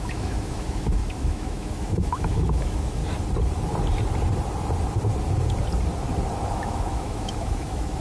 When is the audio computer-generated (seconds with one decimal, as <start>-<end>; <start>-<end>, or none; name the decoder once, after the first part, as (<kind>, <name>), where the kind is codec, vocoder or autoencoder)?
0.0-3.0 (autoencoder, DAC-VAE); 6.5-8.0